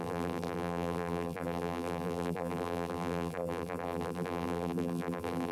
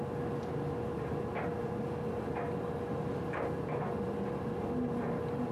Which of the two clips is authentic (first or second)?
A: second